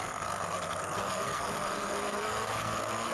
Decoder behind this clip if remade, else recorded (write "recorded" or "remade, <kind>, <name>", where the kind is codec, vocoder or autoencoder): remade, codec, SNAC